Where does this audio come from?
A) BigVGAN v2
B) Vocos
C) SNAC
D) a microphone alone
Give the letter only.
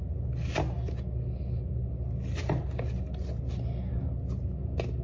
D